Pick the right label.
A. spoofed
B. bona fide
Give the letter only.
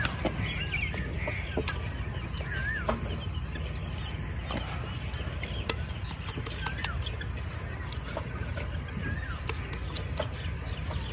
B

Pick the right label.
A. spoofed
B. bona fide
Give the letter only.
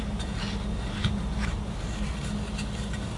B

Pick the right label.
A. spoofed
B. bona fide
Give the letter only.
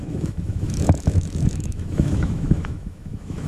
A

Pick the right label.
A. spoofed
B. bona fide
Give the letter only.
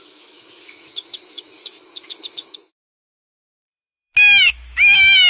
A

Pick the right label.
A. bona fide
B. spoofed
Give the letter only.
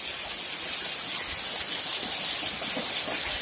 A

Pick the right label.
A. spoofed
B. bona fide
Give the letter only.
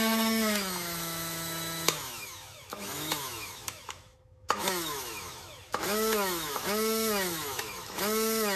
A